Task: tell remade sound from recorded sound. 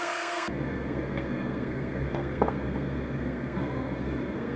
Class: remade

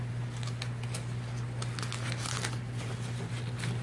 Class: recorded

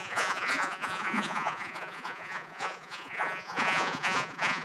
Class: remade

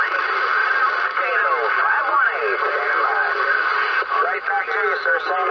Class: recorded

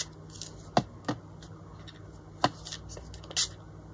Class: recorded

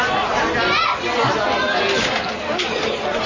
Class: recorded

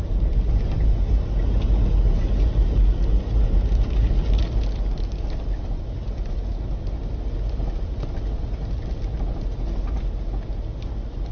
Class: recorded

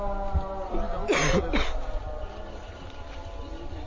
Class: recorded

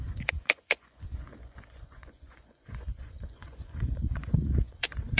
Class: remade